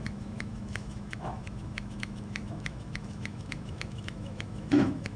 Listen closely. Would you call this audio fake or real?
fake